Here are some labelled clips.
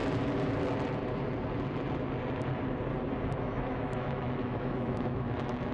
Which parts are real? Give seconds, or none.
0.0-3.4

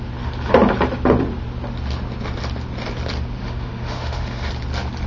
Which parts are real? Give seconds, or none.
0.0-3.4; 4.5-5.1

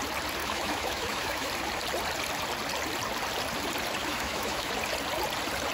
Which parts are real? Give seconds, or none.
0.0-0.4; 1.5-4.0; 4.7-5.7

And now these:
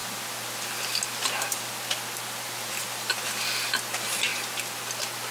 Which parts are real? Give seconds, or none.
0.0-5.3

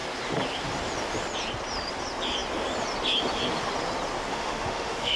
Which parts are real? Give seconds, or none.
0.0-4.3

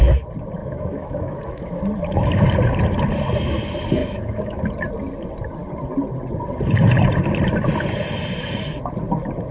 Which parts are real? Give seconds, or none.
0.0-0.6; 1.8-4.0; 4.6-9.5

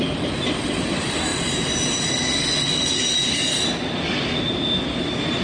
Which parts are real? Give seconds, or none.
0.0-5.4